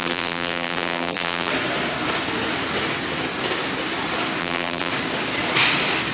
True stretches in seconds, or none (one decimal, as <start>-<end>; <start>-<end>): 1.5-4.4; 4.9-6.1